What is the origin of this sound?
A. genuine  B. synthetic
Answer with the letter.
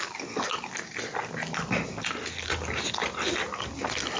A